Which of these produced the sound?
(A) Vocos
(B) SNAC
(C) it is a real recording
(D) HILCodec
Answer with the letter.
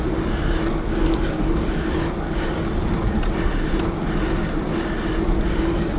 C